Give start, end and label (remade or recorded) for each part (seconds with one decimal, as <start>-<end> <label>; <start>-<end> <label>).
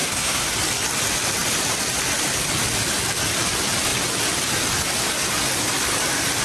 0.0-0.5 remade; 0.5-6.4 recorded